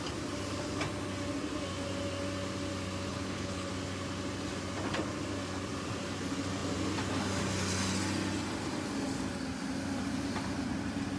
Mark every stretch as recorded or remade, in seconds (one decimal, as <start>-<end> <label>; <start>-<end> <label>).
0.0-3.1 recorded; 3.1-3.7 remade; 3.7-11.2 recorded